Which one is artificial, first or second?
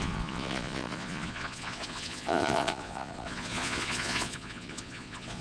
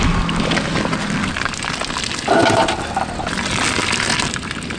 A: first